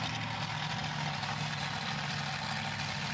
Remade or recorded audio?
recorded